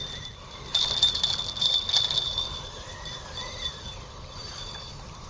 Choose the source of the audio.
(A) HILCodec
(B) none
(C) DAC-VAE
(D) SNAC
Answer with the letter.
B